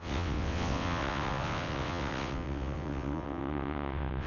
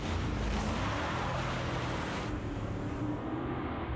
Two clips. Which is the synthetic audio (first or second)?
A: first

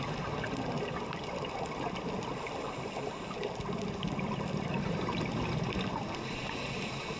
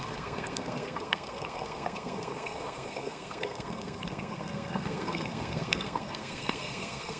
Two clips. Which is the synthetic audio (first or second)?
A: second